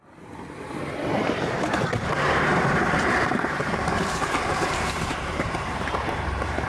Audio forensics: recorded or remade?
remade